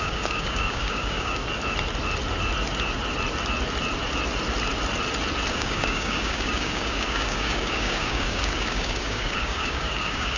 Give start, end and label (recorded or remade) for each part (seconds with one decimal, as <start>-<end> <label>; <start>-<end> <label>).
0.0-1.4 remade; 1.4-5.5 recorded; 5.5-10.4 remade